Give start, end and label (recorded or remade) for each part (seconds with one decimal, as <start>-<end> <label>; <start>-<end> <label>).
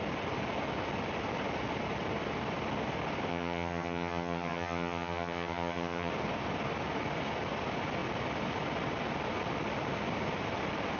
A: 0.0-3.3 recorded; 3.3-6.1 remade; 6.1-11.0 recorded